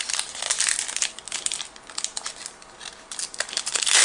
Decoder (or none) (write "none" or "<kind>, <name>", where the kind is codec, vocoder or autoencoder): none